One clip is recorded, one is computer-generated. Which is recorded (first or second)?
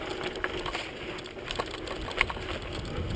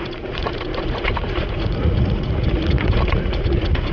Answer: first